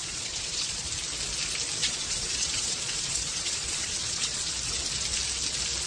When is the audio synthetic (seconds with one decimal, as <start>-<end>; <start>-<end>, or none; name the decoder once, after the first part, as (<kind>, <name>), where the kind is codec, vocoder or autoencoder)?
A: 0.0-0.9 (vocoder, Vocos); 1.8-4.5